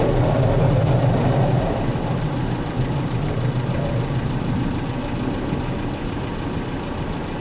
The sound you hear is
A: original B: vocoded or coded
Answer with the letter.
A